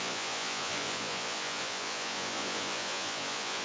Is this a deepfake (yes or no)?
yes